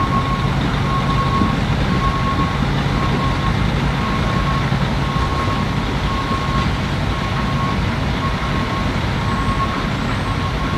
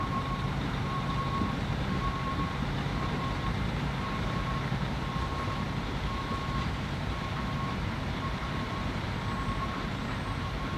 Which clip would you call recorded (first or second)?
first